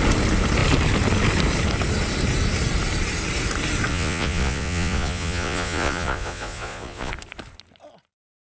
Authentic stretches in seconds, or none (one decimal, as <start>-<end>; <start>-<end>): 0.0-3.9; 7.1-8.4